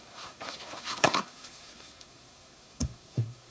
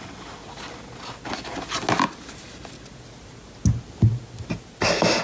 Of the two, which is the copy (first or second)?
first